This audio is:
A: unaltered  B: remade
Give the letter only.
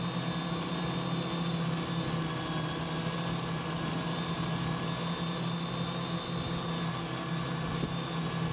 A